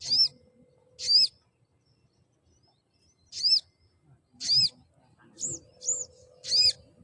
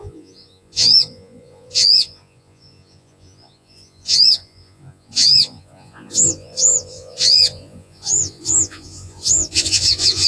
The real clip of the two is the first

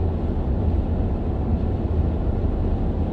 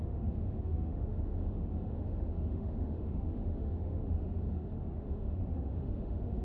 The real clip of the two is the first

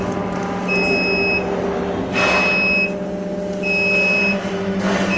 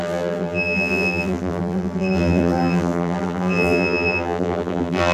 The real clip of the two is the first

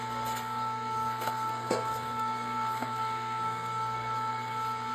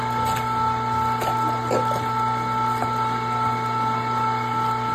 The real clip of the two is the second